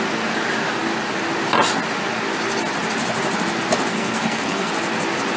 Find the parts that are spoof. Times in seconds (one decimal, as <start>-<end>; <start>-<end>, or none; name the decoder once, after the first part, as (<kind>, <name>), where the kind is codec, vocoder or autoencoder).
3.9-4.7 (codec, SNAC)